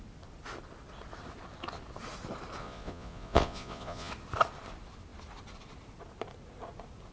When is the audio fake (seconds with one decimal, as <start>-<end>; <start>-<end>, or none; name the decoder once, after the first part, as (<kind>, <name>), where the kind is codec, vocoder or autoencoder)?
2.6-4.1 (vocoder, Vocos)